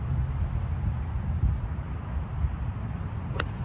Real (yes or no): yes